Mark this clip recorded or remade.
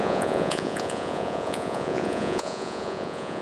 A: remade